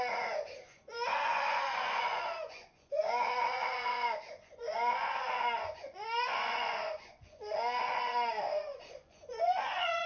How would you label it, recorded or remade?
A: remade